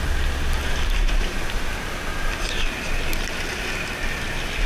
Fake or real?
real